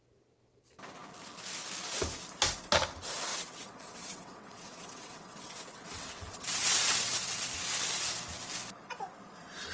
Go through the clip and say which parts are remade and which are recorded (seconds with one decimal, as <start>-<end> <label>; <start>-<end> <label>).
0.0-3.3 recorded; 3.3-7.4 remade; 7.4-9.7 recorded